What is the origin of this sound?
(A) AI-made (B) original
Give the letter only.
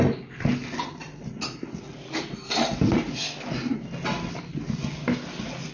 B